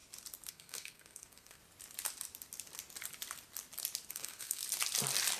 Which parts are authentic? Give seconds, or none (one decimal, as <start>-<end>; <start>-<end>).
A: 0.0-0.5; 1.6-4.1; 4.6-5.4